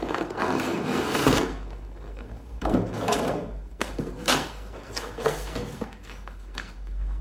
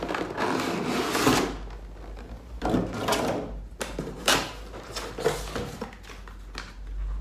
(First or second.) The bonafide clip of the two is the second